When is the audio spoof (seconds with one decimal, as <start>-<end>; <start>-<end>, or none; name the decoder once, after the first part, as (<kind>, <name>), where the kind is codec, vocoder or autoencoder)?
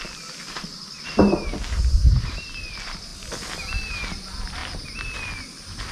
none